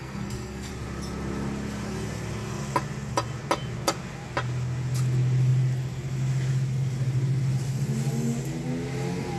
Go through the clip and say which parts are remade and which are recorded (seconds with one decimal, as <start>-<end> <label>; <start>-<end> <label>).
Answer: 0.0-0.7 remade; 0.7-9.4 recorded